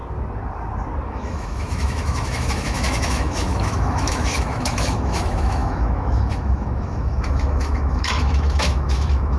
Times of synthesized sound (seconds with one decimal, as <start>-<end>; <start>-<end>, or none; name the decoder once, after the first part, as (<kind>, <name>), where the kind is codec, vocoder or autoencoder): 1.1-9.4 (autoencoder, DAC-VAE)